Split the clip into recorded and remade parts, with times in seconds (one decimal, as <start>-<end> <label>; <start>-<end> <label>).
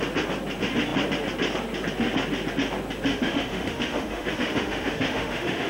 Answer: 0.0-3.1 recorded; 3.1-5.7 remade